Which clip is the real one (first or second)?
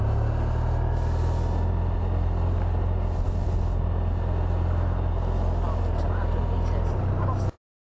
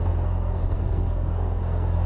first